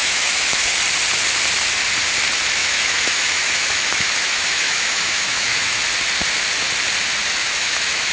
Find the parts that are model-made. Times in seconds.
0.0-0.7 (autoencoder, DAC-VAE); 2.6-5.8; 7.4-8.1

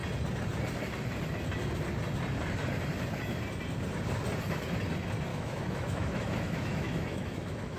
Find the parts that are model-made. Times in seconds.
5.3-7.8 (autoencoder, DAC-VAE)

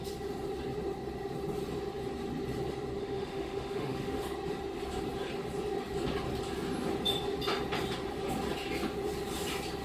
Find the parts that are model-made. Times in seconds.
3.0-4.2 (autoencoder, DAC-VAE)

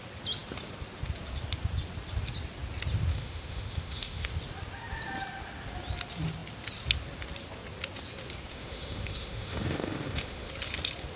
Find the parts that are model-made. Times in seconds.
3.1-4.3 (autoencoder, DAC-VAE); 8.5-10.5

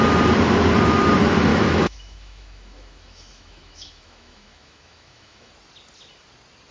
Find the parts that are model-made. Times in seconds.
1.5-5.5 (autoencoder, DAC-VAE)

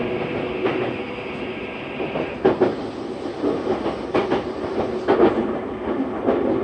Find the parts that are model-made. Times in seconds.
none

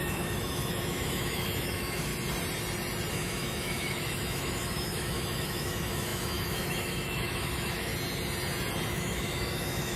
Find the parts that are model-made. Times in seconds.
0.0-2.1 (autoencoder, DAC-VAE); 3.1-7.9; 8.9-10.0

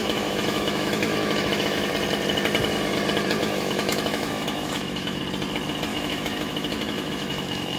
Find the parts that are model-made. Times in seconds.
0.0-1.9 (autoencoder, DAC-VAE); 3.4-5.2; 5.9-7.8